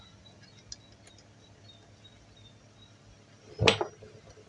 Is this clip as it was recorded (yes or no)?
yes